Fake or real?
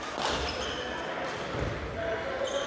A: real